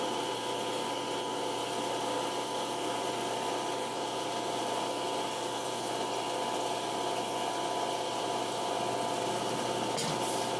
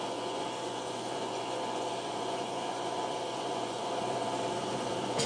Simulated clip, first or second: second